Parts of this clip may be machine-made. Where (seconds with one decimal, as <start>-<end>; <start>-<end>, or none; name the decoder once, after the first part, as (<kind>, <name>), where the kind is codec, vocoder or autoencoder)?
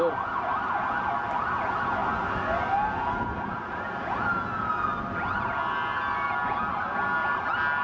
none